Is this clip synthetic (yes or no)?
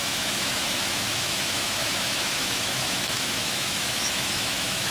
yes